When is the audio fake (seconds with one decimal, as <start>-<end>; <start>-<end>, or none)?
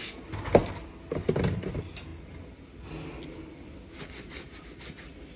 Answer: none